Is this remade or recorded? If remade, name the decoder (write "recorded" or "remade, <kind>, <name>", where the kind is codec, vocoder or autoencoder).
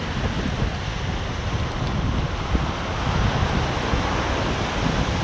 recorded